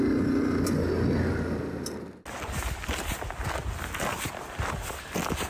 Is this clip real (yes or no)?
yes